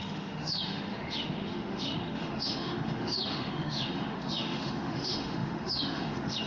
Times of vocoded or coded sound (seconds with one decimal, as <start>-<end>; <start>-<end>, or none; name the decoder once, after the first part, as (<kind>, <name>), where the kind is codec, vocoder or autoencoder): 0.0-6.5 (autoencoder, DAC-VAE)